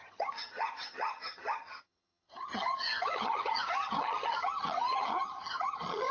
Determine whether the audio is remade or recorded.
remade